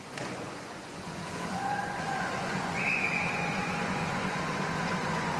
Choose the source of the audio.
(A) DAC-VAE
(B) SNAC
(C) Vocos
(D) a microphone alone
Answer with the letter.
C